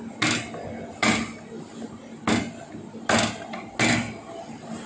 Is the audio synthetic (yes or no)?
no